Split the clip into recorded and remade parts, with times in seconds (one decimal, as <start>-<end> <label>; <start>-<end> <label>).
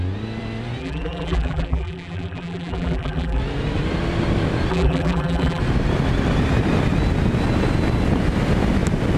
0.0-0.8 recorded; 0.8-3.4 remade; 3.4-4.7 recorded; 4.7-5.6 remade; 5.6-9.2 recorded